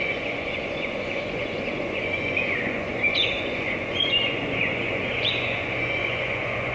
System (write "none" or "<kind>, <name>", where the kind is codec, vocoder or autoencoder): vocoder, Vocos